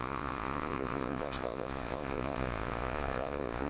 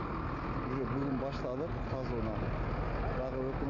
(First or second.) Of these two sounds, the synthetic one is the first